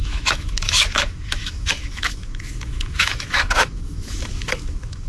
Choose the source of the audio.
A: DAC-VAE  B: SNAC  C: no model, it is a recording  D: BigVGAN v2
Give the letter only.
A